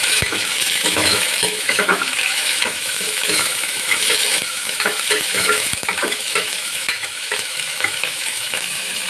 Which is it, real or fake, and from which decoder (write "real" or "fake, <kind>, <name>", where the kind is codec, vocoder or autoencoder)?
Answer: fake, autoencoder, DAC-VAE